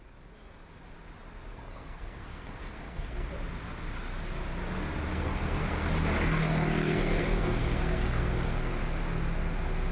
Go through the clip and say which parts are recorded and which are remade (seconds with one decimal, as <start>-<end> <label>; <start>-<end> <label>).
0.0-1.5 recorded; 1.5-3.3 remade; 3.3-5.1 recorded; 5.1-5.9 remade; 5.9-6.4 recorded; 6.4-8.7 remade; 8.7-9.9 recorded